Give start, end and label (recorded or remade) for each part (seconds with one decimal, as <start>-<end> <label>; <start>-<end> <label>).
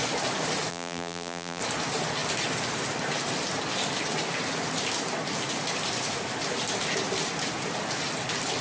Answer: 0.0-0.7 recorded; 0.7-1.6 remade; 1.6-8.6 recorded